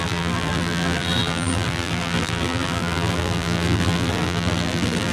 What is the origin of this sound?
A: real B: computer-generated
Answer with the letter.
B